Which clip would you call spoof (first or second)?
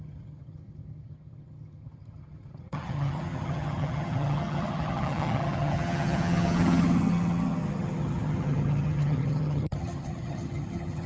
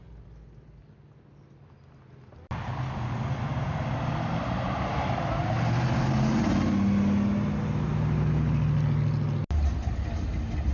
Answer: first